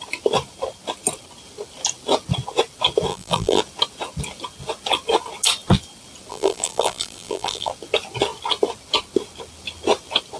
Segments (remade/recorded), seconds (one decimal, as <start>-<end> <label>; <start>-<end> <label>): 0.0-3.1 recorded; 3.1-3.6 remade; 3.6-6.3 recorded; 6.3-7.7 remade; 7.7-10.4 recorded